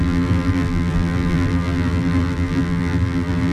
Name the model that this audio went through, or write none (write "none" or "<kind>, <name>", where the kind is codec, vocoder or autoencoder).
vocoder, BigVGAN v2